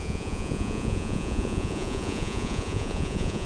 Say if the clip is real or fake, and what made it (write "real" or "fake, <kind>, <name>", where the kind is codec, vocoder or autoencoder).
fake, vocoder, Vocos